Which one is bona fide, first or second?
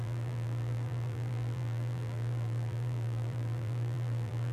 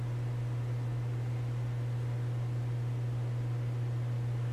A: second